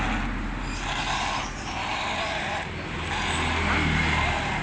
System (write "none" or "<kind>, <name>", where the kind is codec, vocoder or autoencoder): none